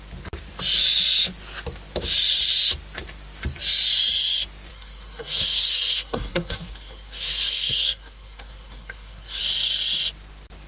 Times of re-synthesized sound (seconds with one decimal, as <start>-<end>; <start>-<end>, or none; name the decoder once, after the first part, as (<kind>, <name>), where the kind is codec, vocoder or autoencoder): 4.7-9.4 (codec, SNAC)